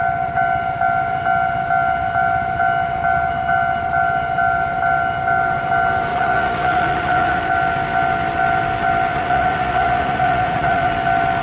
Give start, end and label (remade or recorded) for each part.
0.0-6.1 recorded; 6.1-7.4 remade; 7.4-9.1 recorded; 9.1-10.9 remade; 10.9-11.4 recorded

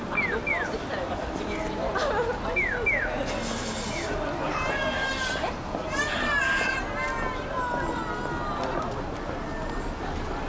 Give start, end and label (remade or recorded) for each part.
0.0-1.0 recorded; 1.0-1.6 remade; 1.6-10.5 recorded

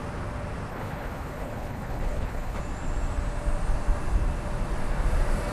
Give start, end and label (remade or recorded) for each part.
0.0-0.7 recorded; 0.7-2.6 remade; 2.6-5.5 recorded

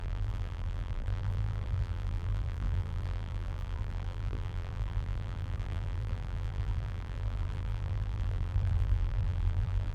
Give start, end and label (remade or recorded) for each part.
0.0-9.9 remade

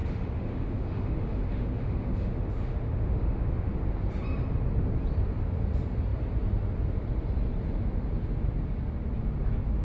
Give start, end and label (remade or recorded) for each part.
0.0-3.7 remade; 3.7-9.8 recorded